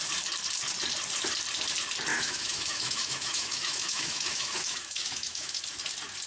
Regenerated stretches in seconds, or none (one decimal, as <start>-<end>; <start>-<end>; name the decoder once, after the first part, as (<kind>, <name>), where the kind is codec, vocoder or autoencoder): 2.1-5.6 (autoencoder, DAC-VAE)